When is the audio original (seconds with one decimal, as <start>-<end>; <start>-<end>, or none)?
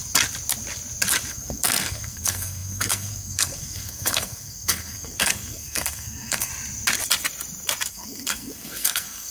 0.0-1.3; 6.5-7.9